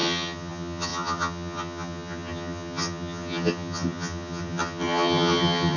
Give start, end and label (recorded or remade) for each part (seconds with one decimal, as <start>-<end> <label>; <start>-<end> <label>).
0.0-5.8 remade